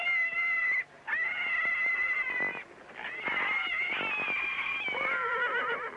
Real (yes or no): yes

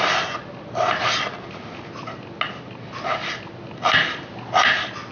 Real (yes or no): yes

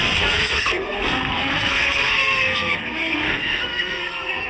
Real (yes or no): no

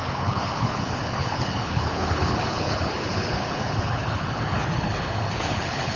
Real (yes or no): no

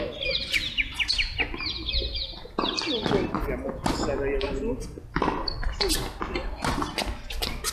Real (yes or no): yes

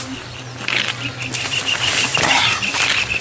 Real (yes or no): no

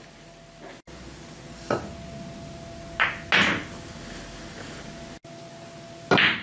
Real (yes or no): yes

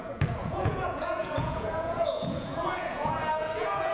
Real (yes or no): no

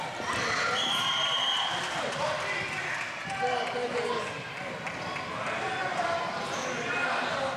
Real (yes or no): yes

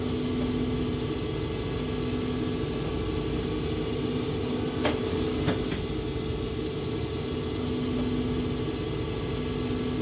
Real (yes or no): yes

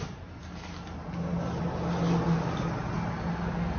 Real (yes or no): yes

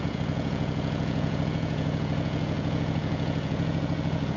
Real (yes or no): no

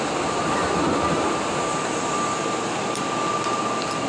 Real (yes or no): yes